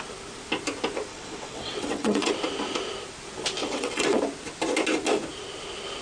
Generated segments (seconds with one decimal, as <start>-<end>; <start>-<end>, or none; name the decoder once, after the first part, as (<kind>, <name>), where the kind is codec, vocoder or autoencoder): 1.1-2.3 (vocoder, WaveNeXt); 3.6-4.2